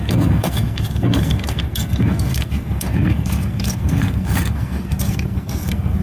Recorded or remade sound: remade